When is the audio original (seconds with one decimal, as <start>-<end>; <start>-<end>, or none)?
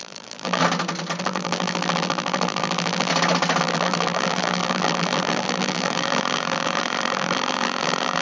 0.6-1.2; 3.1-3.6